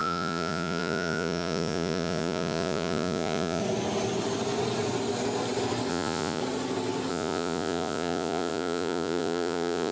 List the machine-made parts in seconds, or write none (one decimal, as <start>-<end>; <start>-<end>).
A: 0.0-3.6; 5.9-6.4; 7.1-9.9